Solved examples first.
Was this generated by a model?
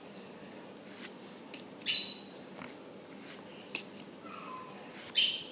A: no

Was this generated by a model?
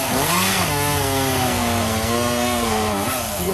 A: yes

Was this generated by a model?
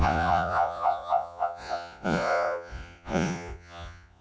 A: yes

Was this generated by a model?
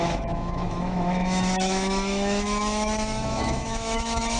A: yes